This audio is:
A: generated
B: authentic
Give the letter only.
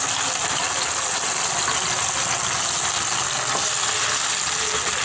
B